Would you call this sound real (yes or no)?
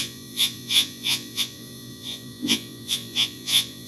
no